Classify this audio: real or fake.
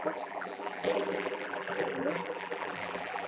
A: fake